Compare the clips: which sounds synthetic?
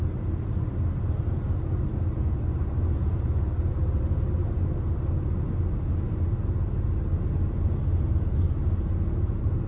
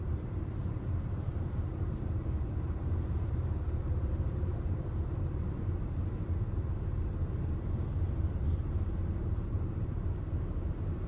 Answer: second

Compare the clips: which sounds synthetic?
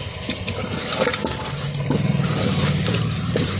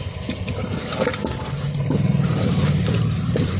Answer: second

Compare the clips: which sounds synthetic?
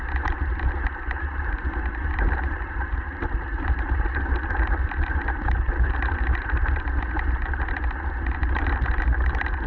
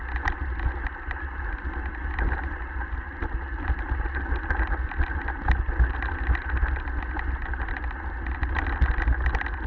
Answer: first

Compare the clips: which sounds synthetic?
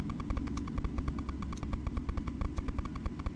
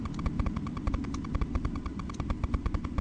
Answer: second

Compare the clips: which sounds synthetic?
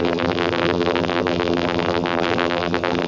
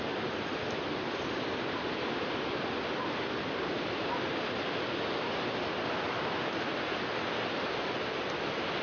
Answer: first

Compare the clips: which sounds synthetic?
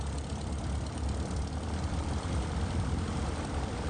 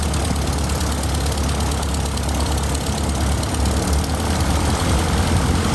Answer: first